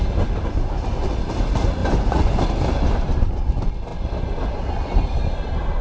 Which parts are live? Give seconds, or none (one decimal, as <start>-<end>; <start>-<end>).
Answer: 0.0-1.8; 2.4-5.8